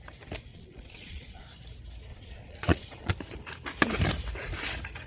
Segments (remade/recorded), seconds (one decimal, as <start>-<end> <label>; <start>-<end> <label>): 0.0-0.5 recorded; 0.5-1.4 remade; 1.4-2.1 recorded; 2.1-3.1 remade; 3.1-5.1 recorded

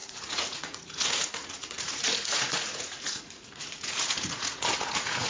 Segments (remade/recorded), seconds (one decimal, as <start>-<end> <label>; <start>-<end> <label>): 0.0-5.3 remade

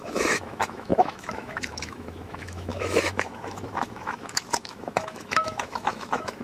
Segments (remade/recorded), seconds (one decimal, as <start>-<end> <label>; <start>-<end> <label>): 0.0-6.4 remade

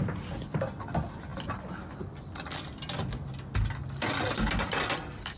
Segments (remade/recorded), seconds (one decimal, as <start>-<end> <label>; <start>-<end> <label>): 0.0-5.4 recorded

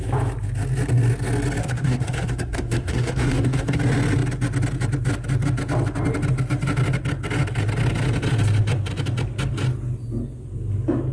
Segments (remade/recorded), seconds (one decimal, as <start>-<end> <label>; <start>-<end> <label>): 0.0-1.6 recorded; 1.6-3.8 remade; 3.8-11.1 recorded

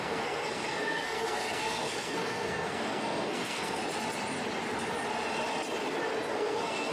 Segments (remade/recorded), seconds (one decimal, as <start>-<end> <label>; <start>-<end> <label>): 0.0-3.8 remade; 3.8-6.3 recorded; 6.3-6.9 remade